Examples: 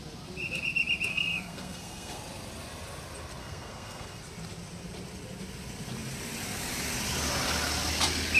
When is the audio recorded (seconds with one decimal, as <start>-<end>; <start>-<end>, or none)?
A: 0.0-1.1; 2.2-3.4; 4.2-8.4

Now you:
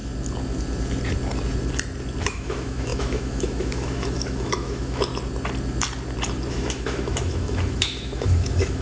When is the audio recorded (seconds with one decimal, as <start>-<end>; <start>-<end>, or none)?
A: 0.0-2.2; 5.1-6.5

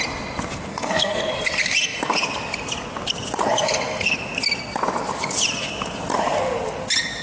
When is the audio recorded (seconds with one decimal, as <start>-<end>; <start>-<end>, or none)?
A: 0.0-0.7; 1.3-7.2

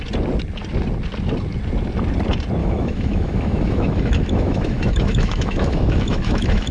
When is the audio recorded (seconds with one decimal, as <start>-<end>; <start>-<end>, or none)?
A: 0.0-2.6